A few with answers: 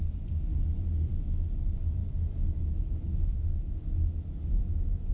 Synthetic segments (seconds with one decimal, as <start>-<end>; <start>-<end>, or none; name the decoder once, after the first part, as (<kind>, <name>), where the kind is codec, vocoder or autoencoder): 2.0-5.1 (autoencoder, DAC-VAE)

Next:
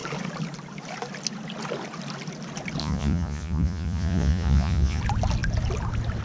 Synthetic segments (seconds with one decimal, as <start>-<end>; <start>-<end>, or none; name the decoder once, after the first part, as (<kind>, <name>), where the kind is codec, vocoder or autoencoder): 2.8-5.0 (vocoder, Vocos)

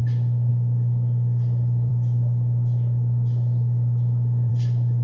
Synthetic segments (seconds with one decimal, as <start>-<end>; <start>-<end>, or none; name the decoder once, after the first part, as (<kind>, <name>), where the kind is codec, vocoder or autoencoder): none

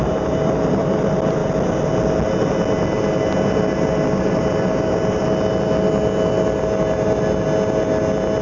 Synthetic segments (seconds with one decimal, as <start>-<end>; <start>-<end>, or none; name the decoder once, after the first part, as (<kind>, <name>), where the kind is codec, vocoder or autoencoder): 0.0-1.4 (vocoder, BigVGAN v2); 4.3-5.2

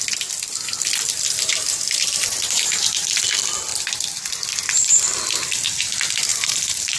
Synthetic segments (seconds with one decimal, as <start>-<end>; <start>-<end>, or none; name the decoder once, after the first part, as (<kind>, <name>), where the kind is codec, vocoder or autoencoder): 1.5-3.2 (vocoder, BigVGAN v2); 6.3-7.0

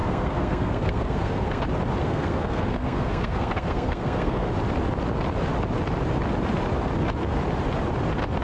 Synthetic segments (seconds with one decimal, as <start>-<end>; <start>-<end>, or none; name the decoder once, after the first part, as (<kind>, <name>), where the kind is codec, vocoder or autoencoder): 0.0-1.6 (codec, SNAC); 2.0-4.5

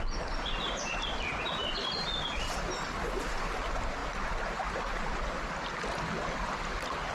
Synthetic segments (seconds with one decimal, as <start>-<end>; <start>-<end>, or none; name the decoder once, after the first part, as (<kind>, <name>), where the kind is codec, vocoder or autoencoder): none